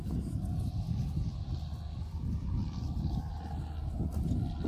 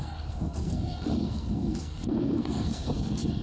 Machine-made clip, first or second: second